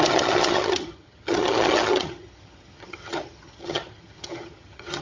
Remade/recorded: remade